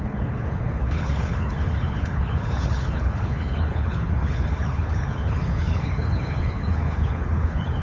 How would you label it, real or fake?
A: fake